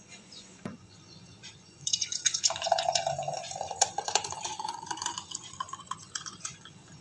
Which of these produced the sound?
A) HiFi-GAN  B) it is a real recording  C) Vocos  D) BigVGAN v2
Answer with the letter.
C